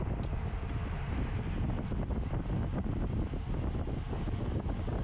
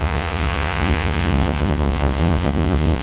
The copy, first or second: second